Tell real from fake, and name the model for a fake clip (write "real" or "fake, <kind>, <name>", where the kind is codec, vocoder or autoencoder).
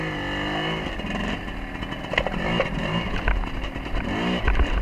real